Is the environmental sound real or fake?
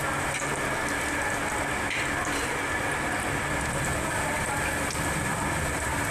real